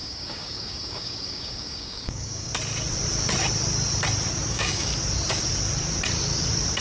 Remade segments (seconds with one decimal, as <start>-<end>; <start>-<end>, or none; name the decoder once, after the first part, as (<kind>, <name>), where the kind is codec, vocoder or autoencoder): 0.0-2.5 (codec, DAC); 4.5-4.9